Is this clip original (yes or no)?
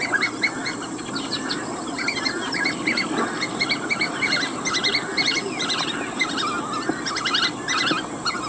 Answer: yes